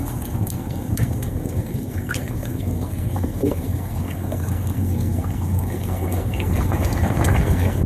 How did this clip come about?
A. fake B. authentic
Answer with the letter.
A